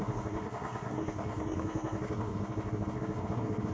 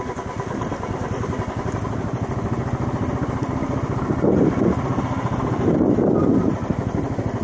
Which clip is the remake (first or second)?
first